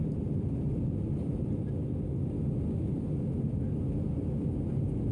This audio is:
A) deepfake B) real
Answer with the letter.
B